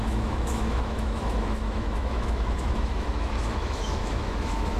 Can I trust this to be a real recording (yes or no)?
no